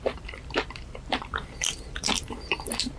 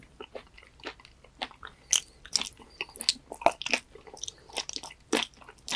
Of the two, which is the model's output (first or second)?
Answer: first